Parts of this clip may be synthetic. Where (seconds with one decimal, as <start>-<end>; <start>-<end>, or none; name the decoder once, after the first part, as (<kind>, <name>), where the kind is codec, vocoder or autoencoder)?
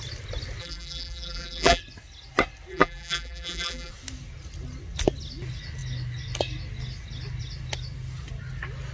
0.6-1.8 (vocoder, BigVGAN v2); 2.7-3.9